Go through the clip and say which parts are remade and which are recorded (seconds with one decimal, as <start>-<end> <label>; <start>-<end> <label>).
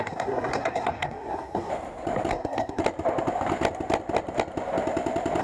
0.0-1.7 remade; 1.7-2.3 recorded; 2.3-2.8 remade; 2.8-5.4 recorded